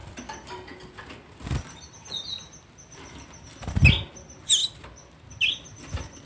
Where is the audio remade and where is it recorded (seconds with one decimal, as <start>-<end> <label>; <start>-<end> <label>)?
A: 0.0-6.2 recorded